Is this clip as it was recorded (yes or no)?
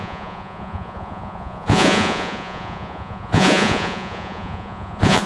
no